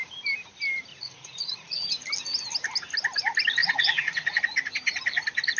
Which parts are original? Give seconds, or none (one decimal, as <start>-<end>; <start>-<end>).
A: 0.0-0.9; 1.9-3.6; 4.4-5.6